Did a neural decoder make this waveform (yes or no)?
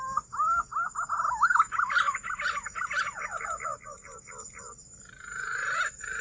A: no